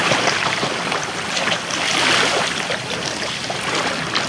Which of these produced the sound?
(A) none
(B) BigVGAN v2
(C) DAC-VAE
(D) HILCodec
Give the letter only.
A